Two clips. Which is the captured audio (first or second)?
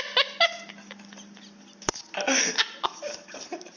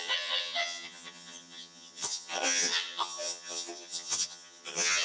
first